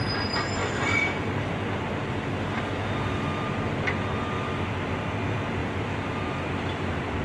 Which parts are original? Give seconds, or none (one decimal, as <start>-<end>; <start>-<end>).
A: 0.0-0.6; 2.6-5.6; 6.2-7.2